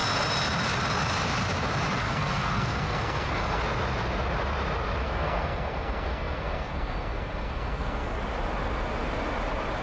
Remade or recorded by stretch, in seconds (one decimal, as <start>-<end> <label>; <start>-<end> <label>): 0.0-2.0 recorded; 2.0-3.6 remade; 3.6-5.0 recorded; 5.0-8.2 remade; 8.2-9.8 recorded